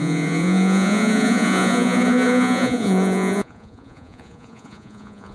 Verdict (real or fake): fake